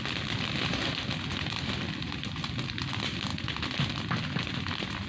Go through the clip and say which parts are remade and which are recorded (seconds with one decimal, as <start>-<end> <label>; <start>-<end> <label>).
0.0-5.1 recorded